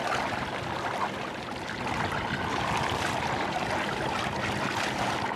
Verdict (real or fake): real